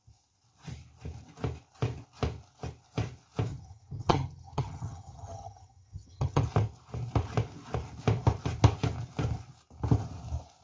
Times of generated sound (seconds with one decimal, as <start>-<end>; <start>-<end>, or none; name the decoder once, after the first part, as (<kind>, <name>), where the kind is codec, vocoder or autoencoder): 3.5-6.4 (vocoder, HiFi-GAN)